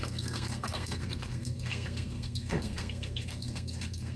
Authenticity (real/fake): fake